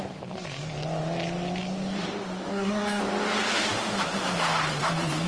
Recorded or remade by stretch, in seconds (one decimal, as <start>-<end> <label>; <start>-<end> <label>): 0.0-2.5 recorded; 2.5-3.0 remade; 3.0-5.3 recorded